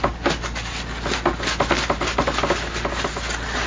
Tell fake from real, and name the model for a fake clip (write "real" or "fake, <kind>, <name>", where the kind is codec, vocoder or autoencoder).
real